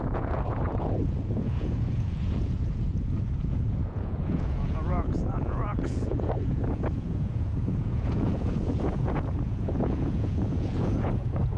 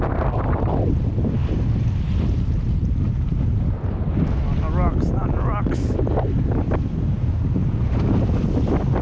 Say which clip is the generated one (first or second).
first